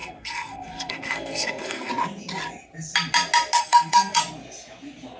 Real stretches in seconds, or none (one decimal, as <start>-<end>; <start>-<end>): 1.9-3.6; 4.2-5.2